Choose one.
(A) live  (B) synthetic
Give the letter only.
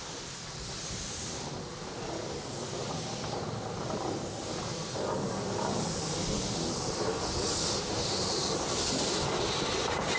A